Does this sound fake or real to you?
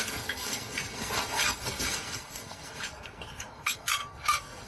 fake